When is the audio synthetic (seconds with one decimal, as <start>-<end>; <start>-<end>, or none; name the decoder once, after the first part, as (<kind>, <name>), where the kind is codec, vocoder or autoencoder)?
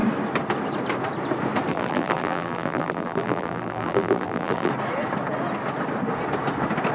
1.7-4.7 (vocoder, BigVGAN v2)